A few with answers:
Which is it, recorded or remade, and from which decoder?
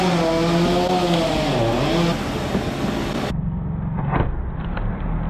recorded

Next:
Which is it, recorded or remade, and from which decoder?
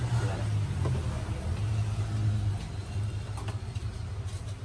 recorded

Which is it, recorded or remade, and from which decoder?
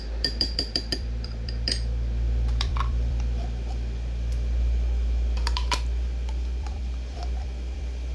remade, vocoder, BigVGAN v2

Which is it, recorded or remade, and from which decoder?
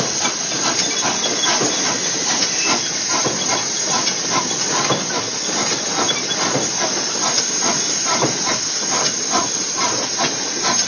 recorded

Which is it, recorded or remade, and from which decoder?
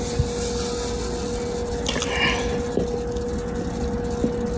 recorded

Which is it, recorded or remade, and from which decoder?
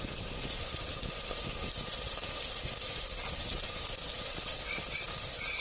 recorded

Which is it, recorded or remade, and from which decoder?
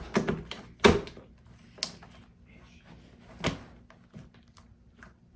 recorded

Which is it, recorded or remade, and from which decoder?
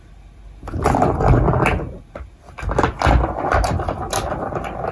recorded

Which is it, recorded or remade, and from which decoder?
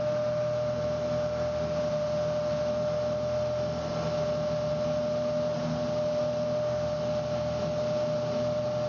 recorded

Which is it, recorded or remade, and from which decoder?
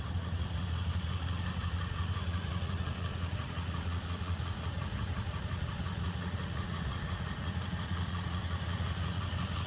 remade, vocoder, Vocos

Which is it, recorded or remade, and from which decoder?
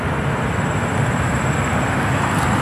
recorded